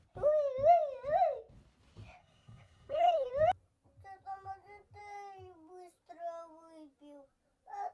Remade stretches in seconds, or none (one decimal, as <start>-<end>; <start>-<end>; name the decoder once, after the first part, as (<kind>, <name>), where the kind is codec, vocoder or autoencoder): 2.2-3.3 (codec, SNAC)